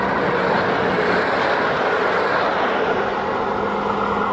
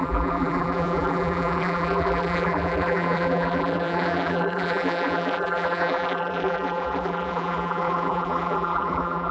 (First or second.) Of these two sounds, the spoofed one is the second